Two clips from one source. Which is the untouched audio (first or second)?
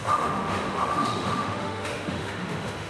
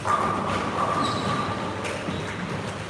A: second